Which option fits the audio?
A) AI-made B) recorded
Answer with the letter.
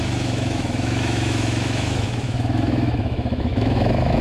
A